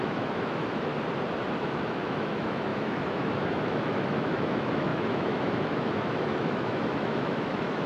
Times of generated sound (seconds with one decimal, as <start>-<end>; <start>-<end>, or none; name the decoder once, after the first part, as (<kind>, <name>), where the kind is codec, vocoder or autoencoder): 0.0-0.9 (autoencoder, DAC-VAE); 1.6-7.9

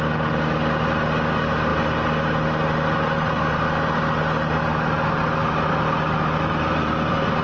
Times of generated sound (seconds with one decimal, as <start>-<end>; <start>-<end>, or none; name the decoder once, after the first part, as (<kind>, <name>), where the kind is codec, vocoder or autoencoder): none

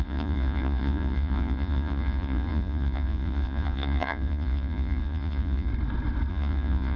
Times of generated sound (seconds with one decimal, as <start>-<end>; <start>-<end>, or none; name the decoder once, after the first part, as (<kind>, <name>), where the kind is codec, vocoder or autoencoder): 0.0-5.7 (vocoder, Vocos); 6.3-7.0

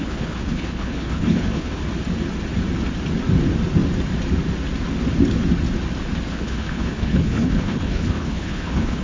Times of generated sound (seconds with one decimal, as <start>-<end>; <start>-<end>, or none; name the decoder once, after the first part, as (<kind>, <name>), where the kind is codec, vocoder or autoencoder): 0.0-1.8 (codec, HILCodec); 6.3-9.0